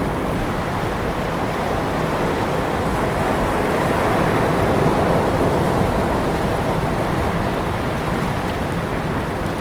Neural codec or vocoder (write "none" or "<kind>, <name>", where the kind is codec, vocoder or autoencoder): none